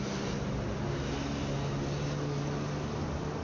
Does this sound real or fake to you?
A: real